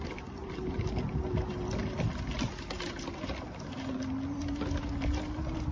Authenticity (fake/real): real